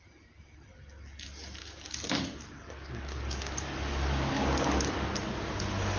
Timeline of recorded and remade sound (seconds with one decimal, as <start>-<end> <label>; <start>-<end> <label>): 0.0-1.6 recorded; 1.6-5.1 remade; 5.1-6.0 recorded